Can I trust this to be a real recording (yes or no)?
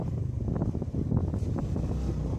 yes